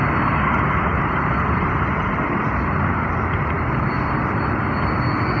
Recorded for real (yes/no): yes